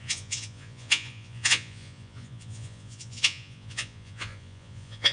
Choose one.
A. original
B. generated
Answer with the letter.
B